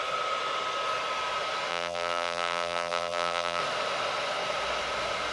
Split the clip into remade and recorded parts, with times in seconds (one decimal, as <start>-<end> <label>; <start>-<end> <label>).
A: 0.0-1.7 recorded; 1.7-3.6 remade; 3.6-5.3 recorded